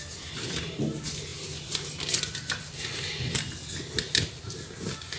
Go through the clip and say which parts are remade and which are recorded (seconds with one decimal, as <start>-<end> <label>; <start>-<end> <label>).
0.0-5.2 recorded